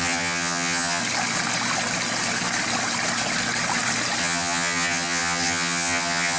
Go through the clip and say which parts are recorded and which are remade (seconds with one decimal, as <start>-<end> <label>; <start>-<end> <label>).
0.0-1.0 remade; 1.0-4.2 recorded; 4.2-6.4 remade